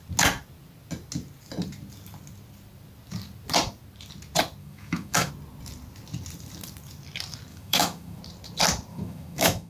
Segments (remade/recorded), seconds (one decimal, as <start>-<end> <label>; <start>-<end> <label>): 0.0-4.6 recorded; 4.6-5.3 remade; 5.3-7.5 recorded; 7.5-8.2 remade; 8.2-8.9 recorded; 8.9-9.7 remade